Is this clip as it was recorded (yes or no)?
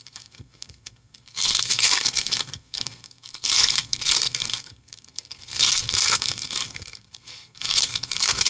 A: no